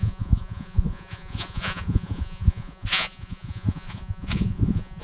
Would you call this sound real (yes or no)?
no